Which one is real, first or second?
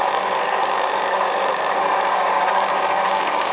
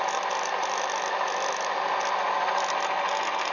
second